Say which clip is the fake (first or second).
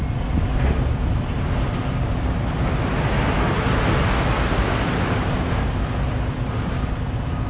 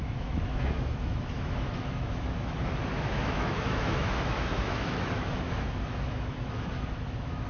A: second